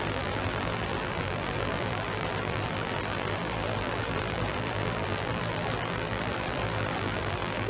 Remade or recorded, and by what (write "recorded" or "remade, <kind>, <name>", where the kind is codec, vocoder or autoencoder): remade, vocoder, BigVGAN v2